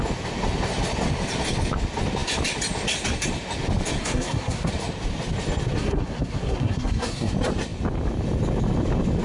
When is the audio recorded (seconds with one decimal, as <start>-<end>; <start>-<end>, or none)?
0.0-4.0; 4.7-5.8; 7.3-9.2